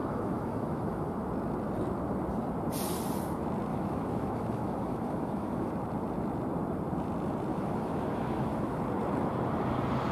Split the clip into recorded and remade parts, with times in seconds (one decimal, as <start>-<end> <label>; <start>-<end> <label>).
0.0-1.1 remade; 1.1-3.7 recorded; 3.7-5.7 remade; 5.7-7.5 recorded; 7.5-8.8 remade; 8.8-10.1 recorded